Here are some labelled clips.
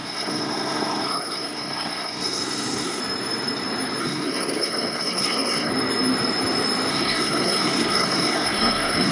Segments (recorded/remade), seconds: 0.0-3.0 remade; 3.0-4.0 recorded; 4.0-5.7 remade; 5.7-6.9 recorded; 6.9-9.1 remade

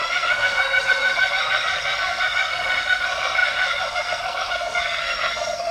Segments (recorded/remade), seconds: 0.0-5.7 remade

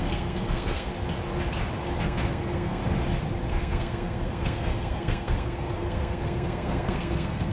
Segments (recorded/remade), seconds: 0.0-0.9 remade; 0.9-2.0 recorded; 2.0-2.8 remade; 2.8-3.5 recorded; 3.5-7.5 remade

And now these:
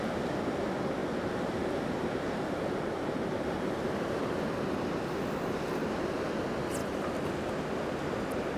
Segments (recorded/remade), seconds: 0.0-1.0 recorded; 1.0-4.4 remade; 4.4-6.8 recorded; 6.8-7.6 remade; 7.6-8.6 recorded